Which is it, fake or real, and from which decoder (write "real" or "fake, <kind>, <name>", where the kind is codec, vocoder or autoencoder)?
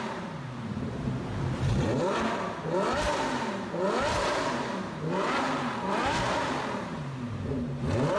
fake, vocoder, BigVGAN v2